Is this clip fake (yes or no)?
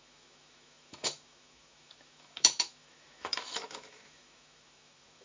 yes